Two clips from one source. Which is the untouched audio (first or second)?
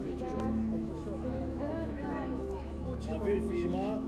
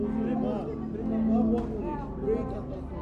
second